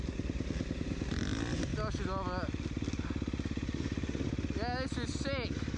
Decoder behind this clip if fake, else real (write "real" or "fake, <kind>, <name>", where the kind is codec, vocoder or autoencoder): real